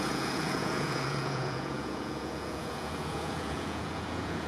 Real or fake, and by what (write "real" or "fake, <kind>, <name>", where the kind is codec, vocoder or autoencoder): fake, vocoder, Vocos